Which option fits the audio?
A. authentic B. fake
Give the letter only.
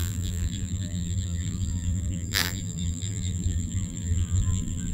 B